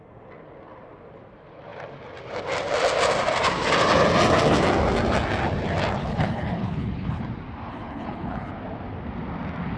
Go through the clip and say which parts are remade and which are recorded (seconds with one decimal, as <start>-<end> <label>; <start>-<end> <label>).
0.0-6.0 recorded; 6.0-7.2 remade; 7.2-7.7 recorded; 7.7-8.5 remade; 8.5-9.8 recorded